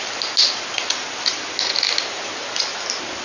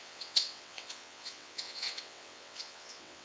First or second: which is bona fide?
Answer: first